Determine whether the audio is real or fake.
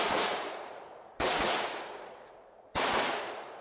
fake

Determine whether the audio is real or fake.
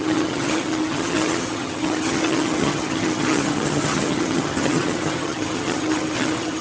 fake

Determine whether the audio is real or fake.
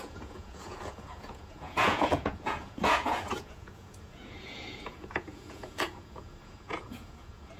fake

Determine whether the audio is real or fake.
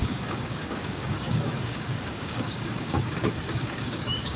fake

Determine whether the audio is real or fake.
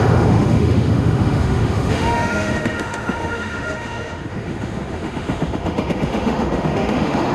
fake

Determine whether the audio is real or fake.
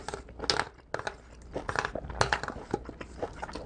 real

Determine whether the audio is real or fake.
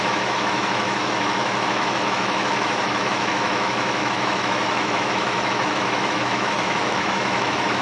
fake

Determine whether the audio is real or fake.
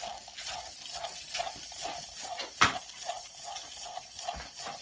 real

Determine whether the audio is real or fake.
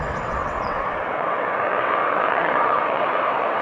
fake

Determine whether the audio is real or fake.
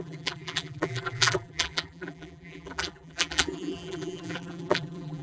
fake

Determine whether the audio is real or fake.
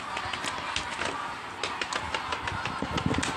real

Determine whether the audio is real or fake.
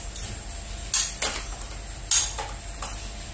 real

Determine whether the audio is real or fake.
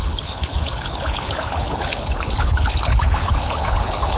fake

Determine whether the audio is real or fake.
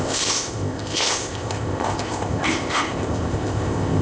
fake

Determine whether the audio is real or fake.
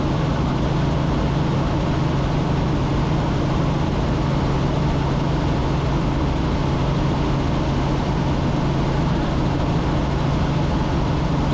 real